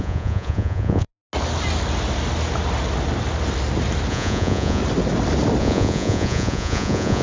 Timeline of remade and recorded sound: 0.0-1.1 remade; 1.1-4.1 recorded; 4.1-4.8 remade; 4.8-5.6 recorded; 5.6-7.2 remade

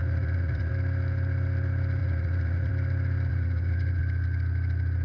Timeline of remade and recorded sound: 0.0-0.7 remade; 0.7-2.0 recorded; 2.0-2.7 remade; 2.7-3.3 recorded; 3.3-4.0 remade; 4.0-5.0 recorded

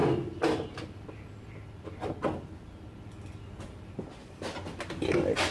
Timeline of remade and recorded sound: 0.0-5.5 recorded

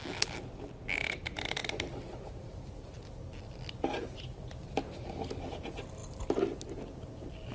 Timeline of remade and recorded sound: 0.0-7.5 recorded

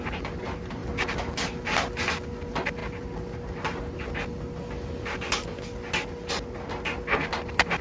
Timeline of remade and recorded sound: 0.0-7.8 recorded